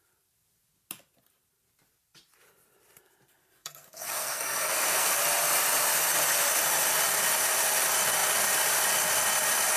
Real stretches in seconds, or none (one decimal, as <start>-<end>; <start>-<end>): 0.0-3.4; 5.2-9.8

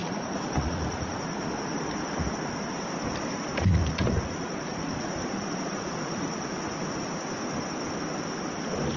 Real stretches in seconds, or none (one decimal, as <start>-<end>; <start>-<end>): 1.5-3.1; 7.2-9.0

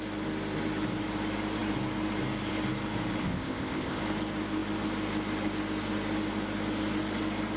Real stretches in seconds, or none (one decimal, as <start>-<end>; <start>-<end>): 0.0-3.2; 4.0-7.6

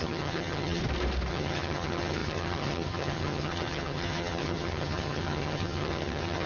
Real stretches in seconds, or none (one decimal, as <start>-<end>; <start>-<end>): 0.8-1.3